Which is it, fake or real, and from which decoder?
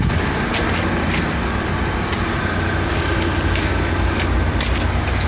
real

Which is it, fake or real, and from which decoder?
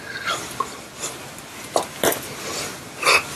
real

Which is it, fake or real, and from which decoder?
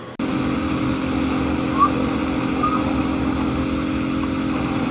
real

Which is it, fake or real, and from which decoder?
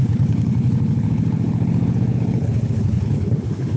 fake, codec, HILCodec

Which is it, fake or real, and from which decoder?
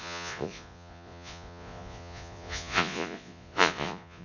fake, vocoder, Vocos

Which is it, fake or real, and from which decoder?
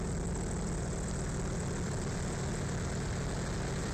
real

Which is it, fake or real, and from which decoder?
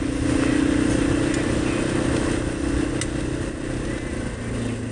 real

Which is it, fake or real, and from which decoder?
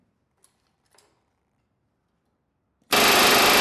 real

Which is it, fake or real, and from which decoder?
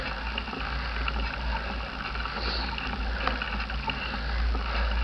real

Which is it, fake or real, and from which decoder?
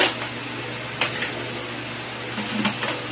real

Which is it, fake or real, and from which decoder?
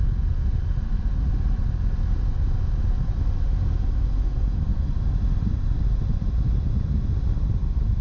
real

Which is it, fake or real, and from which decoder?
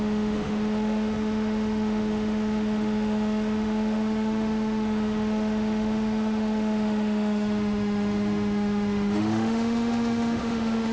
fake, autoencoder, DAC-VAE